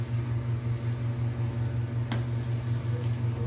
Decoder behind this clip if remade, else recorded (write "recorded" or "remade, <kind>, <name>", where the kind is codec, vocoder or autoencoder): recorded